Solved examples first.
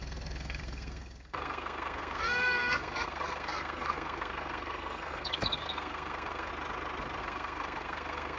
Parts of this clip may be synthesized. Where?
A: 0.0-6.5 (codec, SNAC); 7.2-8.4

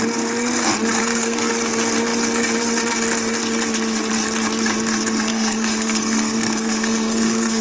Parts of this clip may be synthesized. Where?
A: 1.0-1.5 (codec, SNAC); 5.3-7.6

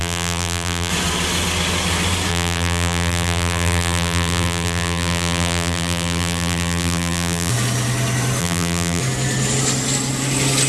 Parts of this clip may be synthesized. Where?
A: 0.0-0.9 (vocoder, BigVGAN v2); 2.3-7.5; 8.4-9.0